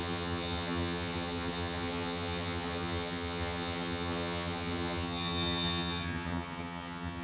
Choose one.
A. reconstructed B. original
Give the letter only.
A